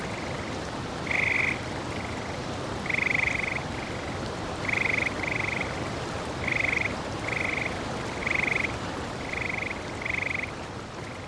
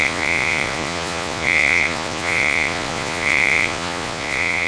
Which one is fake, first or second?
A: second